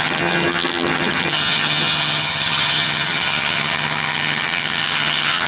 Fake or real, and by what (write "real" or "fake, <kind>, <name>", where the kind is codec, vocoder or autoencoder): fake, vocoder, HiFi-GAN